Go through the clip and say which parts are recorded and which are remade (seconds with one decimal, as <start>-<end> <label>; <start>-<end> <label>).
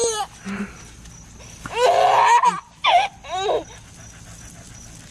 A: 0.0-5.1 recorded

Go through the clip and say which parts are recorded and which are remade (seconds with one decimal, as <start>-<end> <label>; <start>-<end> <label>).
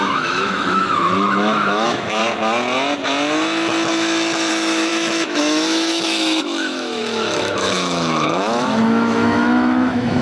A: 0.0-2.2 remade; 2.2-4.5 recorded; 4.5-10.2 remade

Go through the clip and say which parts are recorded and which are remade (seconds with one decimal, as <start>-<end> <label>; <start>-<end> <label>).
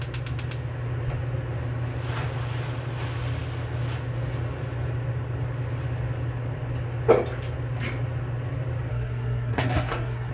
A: 0.0-8.9 recorded; 8.9-10.3 remade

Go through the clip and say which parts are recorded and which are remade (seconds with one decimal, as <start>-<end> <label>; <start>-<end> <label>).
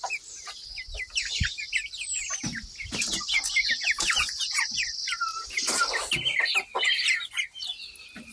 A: 0.0-8.3 recorded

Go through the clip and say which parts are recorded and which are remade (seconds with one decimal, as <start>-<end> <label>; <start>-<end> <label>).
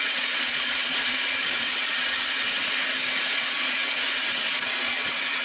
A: 0.0-2.1 remade; 2.1-3.3 recorded; 3.3-5.4 remade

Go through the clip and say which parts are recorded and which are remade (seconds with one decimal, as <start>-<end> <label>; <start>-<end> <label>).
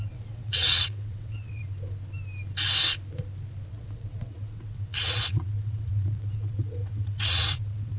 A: 0.0-1.6 remade; 1.6-3.7 recorded; 3.7-8.0 remade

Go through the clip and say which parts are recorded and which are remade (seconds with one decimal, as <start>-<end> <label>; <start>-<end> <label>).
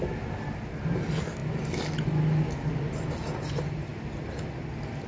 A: 0.0-5.1 recorded